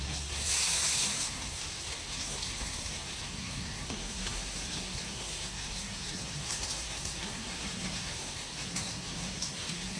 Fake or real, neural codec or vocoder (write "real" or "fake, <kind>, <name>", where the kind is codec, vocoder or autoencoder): fake, codec, SNAC